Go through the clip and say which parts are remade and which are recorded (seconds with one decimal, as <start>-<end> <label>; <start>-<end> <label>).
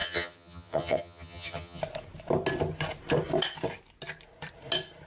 0.0-1.8 remade; 1.8-5.1 recorded